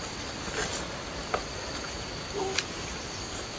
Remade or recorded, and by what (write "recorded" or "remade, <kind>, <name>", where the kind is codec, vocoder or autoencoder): recorded